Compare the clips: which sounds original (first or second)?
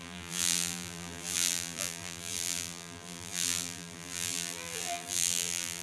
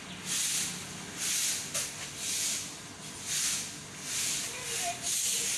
second